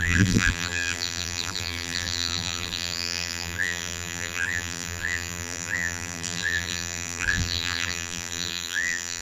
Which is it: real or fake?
fake